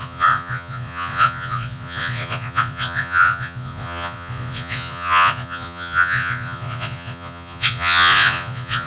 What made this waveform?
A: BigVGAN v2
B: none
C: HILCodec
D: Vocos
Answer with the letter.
D